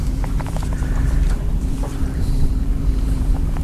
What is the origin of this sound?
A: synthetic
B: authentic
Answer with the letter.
A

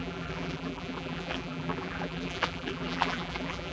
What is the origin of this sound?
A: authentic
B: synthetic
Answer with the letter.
B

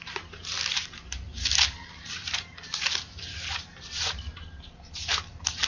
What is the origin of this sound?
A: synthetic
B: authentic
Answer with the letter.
A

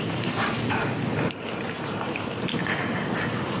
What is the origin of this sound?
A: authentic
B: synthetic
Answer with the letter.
B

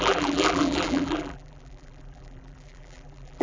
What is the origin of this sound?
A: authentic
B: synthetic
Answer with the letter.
B